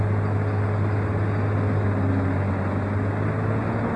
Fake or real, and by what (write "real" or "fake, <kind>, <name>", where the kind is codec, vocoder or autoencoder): real